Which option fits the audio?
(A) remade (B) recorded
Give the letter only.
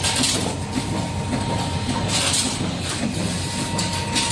B